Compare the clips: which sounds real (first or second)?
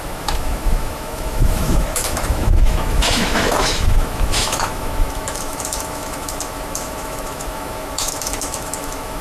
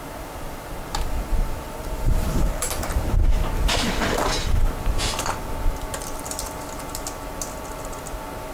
second